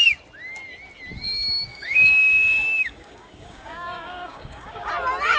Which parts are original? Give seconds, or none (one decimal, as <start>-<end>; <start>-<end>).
0.0-1.7; 4.9-5.4